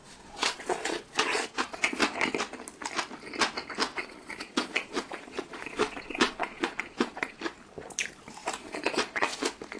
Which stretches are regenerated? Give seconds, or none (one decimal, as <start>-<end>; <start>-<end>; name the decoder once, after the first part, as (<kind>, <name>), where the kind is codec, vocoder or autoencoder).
0.0-2.0 (vocoder, Vocos); 3.9-7.4; 8.6-9.4